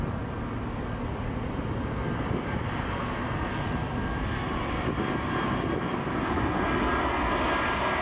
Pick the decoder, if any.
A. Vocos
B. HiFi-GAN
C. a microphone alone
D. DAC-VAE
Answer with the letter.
C